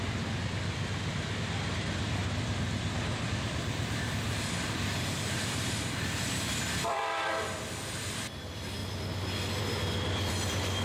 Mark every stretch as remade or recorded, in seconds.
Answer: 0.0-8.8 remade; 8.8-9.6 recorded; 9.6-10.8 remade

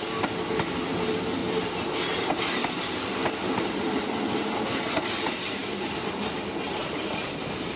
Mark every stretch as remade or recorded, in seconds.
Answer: 0.0-1.4 recorded; 1.4-3.7 remade; 3.7-6.8 recorded; 6.8-7.8 remade

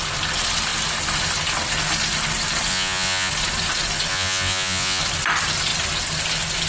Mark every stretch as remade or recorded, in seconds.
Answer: 0.0-2.7 recorded; 2.7-3.3 remade; 3.3-4.1 recorded; 4.1-5.0 remade; 5.0-6.7 recorded

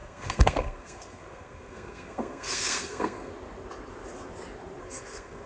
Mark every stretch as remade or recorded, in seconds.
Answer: 0.0-3.3 remade; 3.3-4.8 recorded; 4.8-5.5 remade

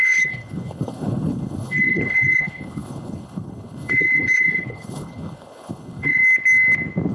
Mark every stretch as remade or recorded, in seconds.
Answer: 0.0-6.2 remade; 6.2-7.1 recorded

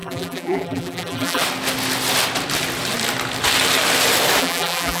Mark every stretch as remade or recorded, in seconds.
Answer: 0.0-1.4 remade; 1.4-4.4 recorded; 4.4-5.0 remade

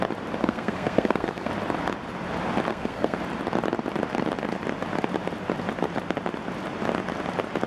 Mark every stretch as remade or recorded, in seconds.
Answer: 0.0-0.4 recorded; 0.4-1.5 remade; 1.5-2.7 recorded; 2.7-3.2 remade; 3.2-7.7 recorded

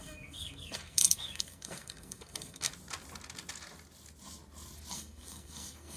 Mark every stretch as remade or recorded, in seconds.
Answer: 0.0-2.7 remade; 2.7-4.9 recorded; 4.9-6.0 remade